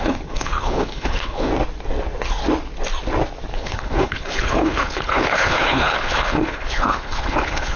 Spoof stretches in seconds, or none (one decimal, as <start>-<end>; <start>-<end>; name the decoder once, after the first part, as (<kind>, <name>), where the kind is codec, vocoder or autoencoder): 0.0-1.5 (codec, HILCodec); 3.5-7.8